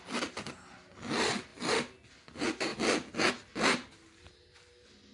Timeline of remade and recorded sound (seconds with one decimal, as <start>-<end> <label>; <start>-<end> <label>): 0.0-5.1 recorded